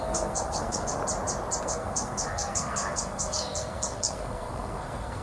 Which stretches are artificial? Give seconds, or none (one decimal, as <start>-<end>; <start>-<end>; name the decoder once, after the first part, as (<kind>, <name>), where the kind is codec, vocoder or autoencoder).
0.0-1.0 (codec, SNAC); 1.6-5.2